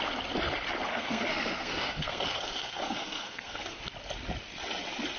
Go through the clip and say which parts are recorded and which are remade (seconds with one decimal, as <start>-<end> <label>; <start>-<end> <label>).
0.0-0.9 recorded; 0.9-3.8 remade; 3.8-5.2 recorded